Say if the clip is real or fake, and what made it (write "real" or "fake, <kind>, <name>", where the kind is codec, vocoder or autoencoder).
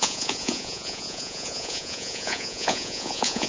fake, vocoder, Vocos